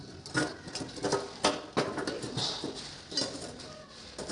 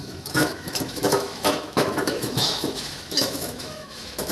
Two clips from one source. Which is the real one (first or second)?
first